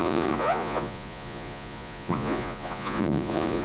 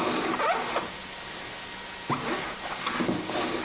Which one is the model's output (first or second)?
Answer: first